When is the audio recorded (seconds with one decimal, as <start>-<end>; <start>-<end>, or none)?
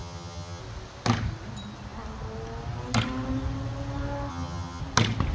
0.6-4.3; 4.8-5.3